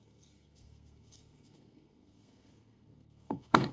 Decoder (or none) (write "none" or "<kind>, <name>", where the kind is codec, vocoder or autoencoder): codec, SNAC